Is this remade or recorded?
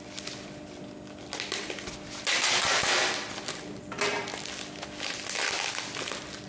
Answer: recorded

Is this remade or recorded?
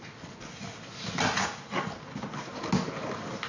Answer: recorded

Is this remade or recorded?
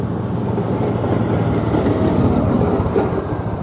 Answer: remade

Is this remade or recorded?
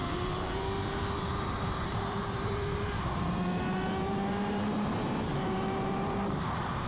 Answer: remade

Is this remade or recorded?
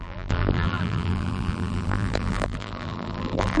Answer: remade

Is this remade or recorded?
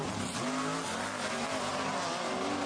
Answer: recorded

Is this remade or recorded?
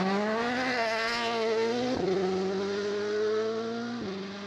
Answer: recorded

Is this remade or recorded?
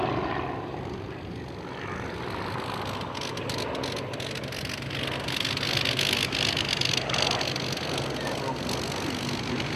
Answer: recorded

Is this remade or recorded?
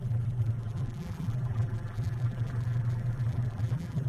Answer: remade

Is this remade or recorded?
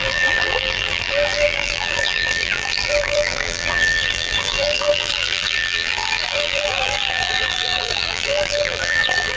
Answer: remade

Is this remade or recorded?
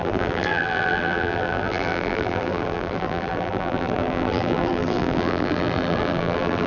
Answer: remade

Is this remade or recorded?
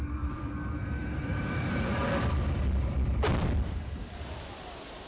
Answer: remade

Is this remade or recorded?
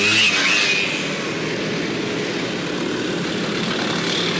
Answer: recorded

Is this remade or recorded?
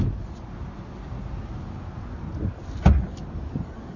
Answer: recorded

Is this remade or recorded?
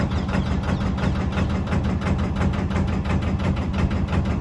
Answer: recorded